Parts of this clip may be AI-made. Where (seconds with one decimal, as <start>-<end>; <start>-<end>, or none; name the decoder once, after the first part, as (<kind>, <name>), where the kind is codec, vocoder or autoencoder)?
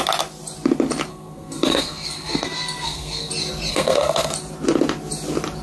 1.1-3.3 (codec, SNAC); 3.7-4.3